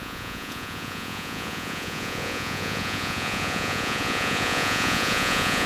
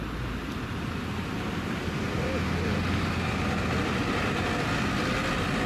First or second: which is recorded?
second